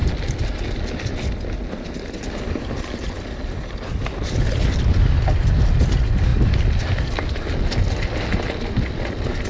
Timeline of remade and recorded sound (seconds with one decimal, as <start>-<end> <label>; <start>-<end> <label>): 0.0-9.5 recorded